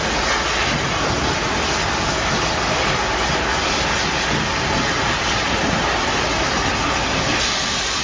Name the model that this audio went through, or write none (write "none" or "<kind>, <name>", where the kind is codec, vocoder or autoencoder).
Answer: none